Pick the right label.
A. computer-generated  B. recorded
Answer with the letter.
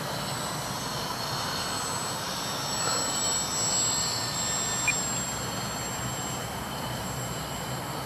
B